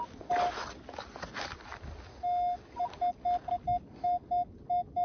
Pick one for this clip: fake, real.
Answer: real